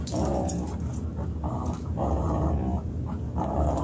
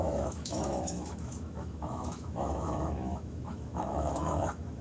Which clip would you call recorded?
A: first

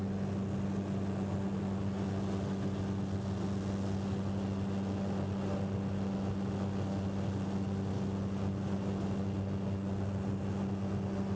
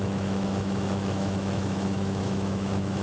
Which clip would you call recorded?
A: first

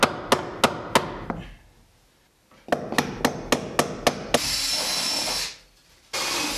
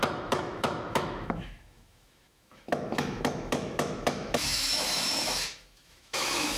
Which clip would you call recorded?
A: first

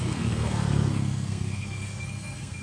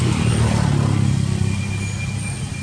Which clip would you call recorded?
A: second